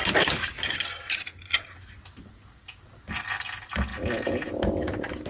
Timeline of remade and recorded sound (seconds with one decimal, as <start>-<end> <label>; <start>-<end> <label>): 0.0-5.3 recorded